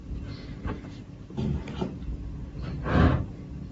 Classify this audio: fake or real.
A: real